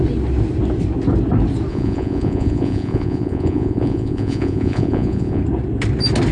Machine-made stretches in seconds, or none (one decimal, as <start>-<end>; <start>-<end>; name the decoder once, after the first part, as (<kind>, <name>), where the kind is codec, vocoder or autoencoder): 1.7-5.4 (vocoder, Vocos)